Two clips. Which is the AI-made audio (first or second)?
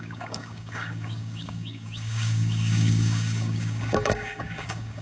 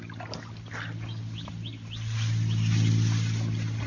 first